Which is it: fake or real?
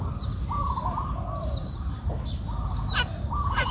real